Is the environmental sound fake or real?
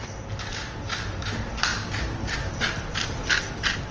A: real